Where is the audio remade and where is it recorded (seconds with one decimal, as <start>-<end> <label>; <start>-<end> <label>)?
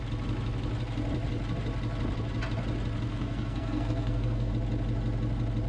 0.0-3.1 recorded; 3.1-4.5 remade; 4.5-5.7 recorded